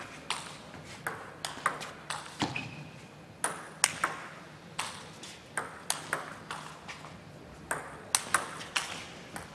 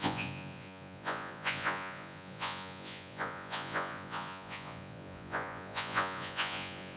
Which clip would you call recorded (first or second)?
first